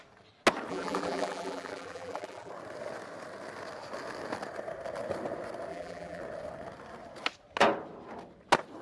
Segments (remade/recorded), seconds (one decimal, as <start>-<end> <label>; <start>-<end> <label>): 0.0-0.7 recorded; 0.7-2.5 remade; 2.5-5.7 recorded; 5.7-6.2 remade; 6.2-8.8 recorded